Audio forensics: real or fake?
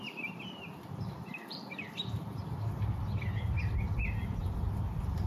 fake